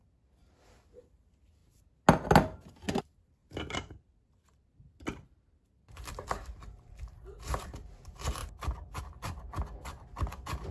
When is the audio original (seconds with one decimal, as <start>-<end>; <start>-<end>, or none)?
1.6-3.0; 8.4-9.0